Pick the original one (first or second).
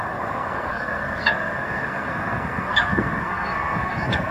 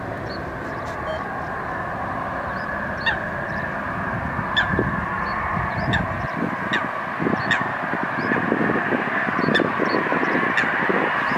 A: second